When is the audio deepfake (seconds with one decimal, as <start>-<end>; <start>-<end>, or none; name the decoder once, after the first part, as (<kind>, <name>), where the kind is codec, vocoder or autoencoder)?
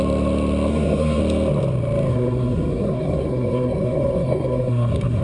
0.7-1.2 (codec, SNAC); 2.1-5.2